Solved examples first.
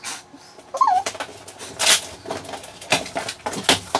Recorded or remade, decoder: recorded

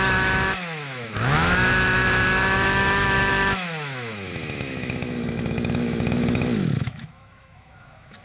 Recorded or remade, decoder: remade, autoencoder, DAC-VAE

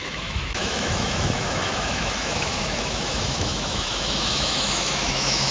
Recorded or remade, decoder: remade, autoencoder, DAC-VAE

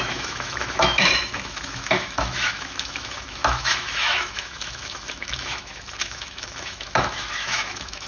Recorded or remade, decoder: remade, autoencoder, DAC-VAE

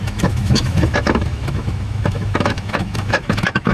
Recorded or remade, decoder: remade, autoencoder, DAC-VAE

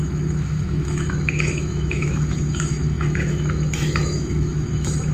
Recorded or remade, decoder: remade, autoencoder, DAC-VAE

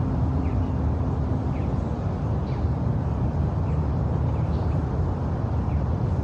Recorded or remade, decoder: recorded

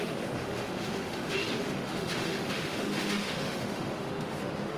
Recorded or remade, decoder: remade, autoencoder, DAC-VAE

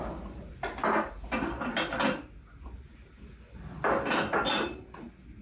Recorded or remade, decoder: recorded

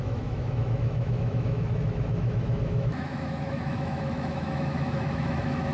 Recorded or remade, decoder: remade, autoencoder, DAC-VAE